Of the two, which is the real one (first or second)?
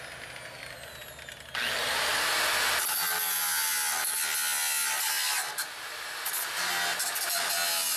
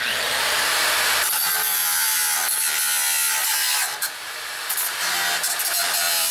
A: first